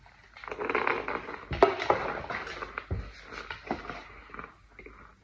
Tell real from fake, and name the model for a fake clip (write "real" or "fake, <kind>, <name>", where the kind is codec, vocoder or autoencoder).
real